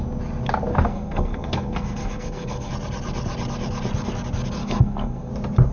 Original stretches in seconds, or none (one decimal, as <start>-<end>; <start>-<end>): 0.0-0.7; 2.7-4.6; 5.3-5.7

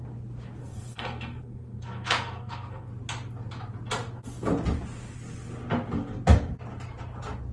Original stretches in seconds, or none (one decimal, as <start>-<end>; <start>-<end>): 0.0-0.6; 2.9-7.5

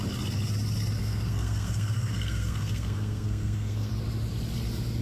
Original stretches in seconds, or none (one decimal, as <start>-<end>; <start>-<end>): 0.0-1.0; 3.9-5.0